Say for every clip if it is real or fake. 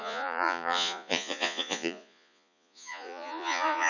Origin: fake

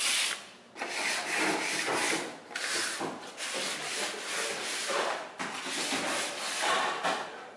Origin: real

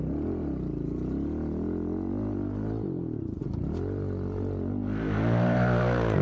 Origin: real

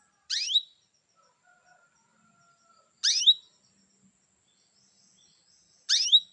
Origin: real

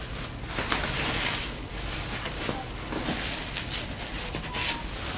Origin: real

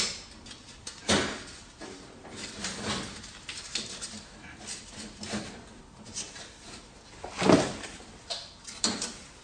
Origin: real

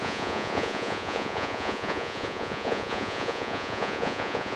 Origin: fake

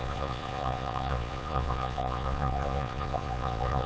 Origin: fake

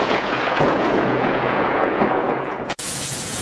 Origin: fake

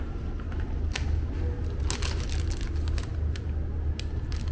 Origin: real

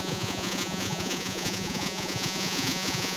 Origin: fake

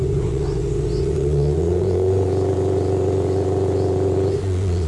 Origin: fake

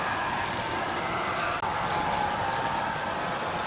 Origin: real